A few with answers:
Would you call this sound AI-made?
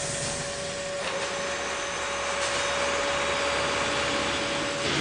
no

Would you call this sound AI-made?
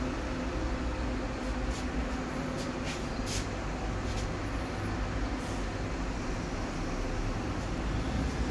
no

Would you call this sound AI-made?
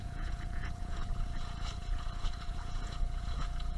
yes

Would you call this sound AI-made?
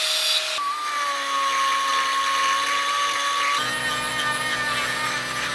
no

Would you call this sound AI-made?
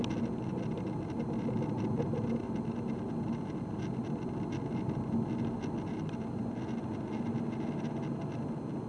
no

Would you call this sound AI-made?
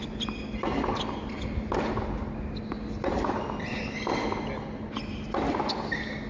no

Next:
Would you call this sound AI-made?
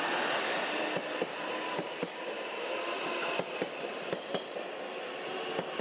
no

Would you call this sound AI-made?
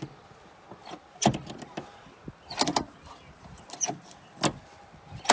no